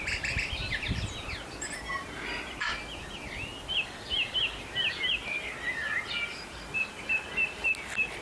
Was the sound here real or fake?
real